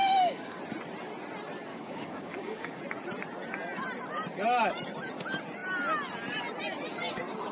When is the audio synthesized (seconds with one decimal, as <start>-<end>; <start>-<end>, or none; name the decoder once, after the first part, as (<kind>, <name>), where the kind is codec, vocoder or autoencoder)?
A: 0.0-0.6 (codec, DAC); 1.7-2.8